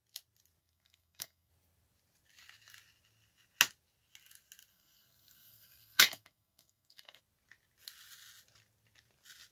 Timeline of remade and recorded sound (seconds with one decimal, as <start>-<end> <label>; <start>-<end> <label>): 0.0-0.6 recorded; 0.6-1.5 remade; 1.5-4.7 recorded; 4.7-7.2 remade; 7.2-9.5 recorded

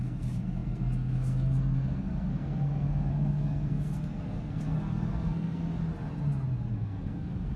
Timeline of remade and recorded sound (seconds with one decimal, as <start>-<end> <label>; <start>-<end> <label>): 0.0-5.6 remade; 5.6-6.7 recorded; 6.7-7.6 remade